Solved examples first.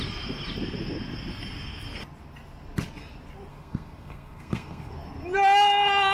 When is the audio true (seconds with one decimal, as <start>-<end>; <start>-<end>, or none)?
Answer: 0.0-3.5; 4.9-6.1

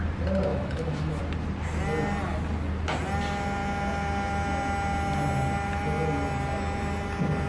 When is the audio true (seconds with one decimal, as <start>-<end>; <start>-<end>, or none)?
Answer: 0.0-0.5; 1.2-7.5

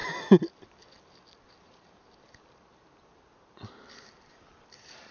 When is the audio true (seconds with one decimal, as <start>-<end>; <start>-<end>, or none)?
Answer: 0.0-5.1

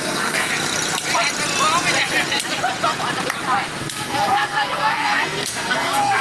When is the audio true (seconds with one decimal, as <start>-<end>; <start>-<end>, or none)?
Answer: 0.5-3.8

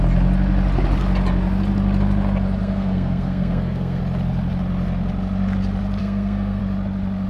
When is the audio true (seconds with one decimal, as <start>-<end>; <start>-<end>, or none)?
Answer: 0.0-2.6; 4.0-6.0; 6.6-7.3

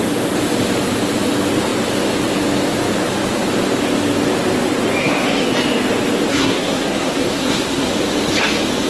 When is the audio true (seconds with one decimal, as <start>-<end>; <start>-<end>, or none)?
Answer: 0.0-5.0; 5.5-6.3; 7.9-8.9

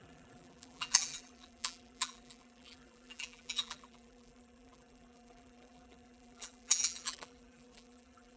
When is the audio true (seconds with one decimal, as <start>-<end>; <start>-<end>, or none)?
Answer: none

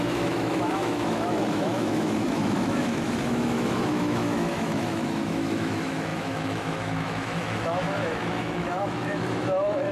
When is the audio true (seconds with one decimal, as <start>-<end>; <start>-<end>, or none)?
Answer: none